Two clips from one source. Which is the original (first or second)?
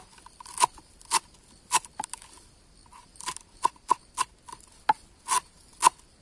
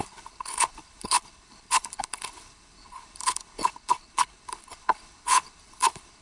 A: first